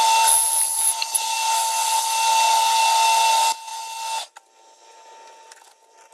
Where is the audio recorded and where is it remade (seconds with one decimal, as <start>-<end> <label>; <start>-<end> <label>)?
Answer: 0.0-6.1 recorded